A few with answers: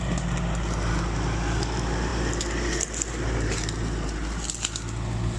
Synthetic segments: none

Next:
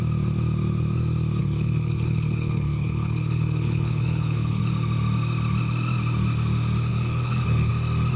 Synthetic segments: 1.4-4.6 (codec, HILCodec); 6.9-7.7

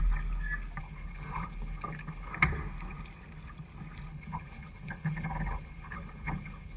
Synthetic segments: 0.8-2.3 (codec, HILCodec); 4.1-6.8

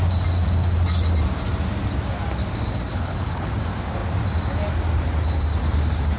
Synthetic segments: 2.9-3.5 (codec, HILCodec)